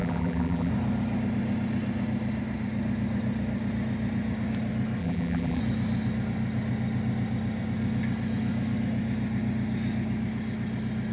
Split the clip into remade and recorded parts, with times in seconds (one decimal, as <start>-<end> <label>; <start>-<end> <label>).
0.0-0.7 remade; 0.7-5.0 recorded; 5.0-5.6 remade; 5.6-11.1 recorded